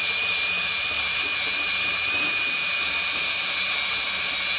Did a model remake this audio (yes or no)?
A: no